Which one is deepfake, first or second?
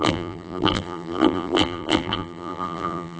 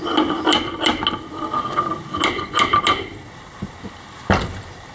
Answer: first